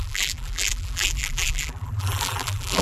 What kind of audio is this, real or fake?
fake